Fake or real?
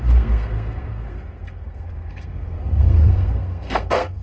fake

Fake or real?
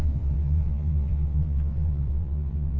fake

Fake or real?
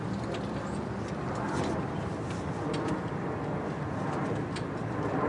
real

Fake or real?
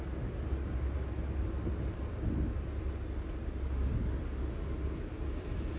real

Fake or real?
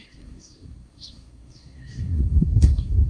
fake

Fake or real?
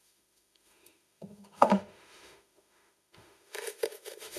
fake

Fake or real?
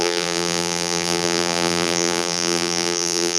fake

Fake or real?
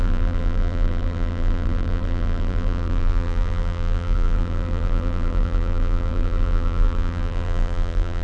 fake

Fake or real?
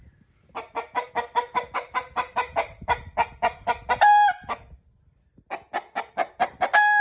real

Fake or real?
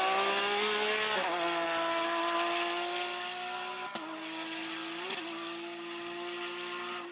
real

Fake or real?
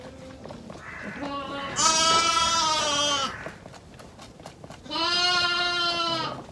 real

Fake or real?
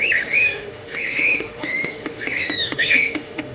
fake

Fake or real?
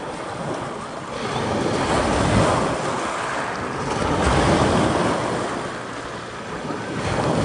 real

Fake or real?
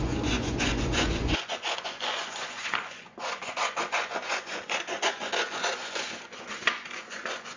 fake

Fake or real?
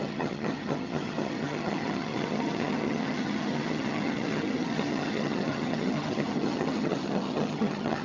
fake